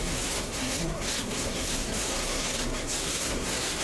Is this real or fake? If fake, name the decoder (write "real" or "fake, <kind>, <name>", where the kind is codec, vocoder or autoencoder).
fake, codec, SNAC